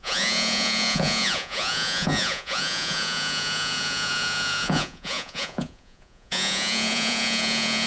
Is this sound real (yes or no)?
no